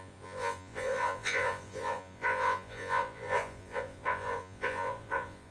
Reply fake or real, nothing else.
fake